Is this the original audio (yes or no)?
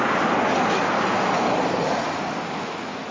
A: yes